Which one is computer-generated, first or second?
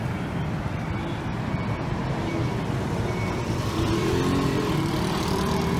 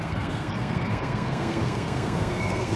second